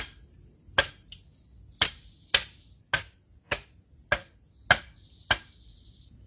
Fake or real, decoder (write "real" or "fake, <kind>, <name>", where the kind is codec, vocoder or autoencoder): real